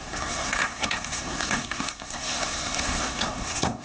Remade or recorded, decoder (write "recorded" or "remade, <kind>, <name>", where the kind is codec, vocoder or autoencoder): remade, codec, SNAC